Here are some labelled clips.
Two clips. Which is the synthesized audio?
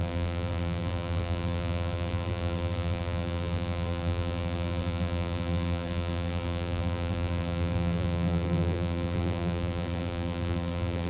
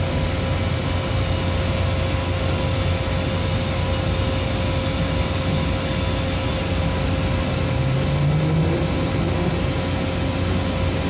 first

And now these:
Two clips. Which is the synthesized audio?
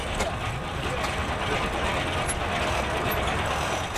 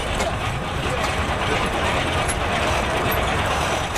second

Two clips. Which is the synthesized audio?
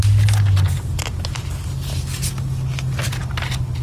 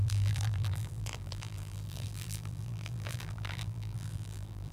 second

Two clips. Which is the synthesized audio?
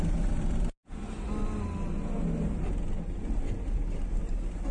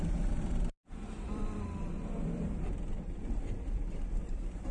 second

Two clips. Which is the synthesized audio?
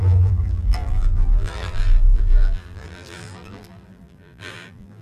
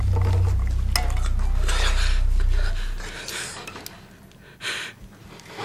first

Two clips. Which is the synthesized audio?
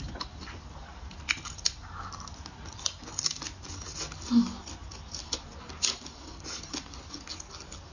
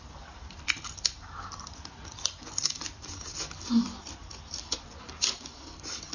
second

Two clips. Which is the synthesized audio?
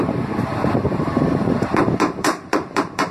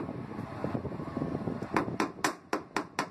first